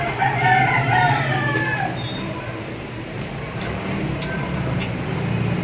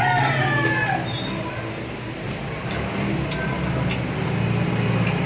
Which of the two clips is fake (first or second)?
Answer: first